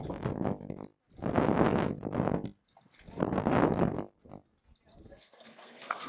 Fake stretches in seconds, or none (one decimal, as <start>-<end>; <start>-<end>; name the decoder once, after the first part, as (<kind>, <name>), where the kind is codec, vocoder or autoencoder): 4.9-6.1 (codec, SNAC)

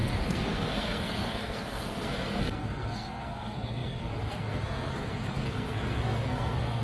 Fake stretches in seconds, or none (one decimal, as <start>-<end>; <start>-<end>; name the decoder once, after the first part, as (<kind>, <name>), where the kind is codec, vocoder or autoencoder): 0.0-6.8 (codec, SNAC)